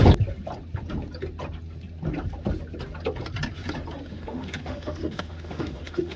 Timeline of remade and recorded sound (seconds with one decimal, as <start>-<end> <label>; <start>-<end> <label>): 0.0-4.1 recorded; 4.1-6.2 remade